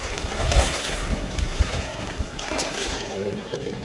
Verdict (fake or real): fake